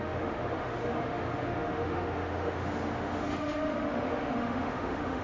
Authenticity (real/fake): fake